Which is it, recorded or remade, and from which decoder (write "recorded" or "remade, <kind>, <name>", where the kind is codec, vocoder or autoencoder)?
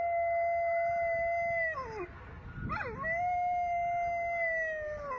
recorded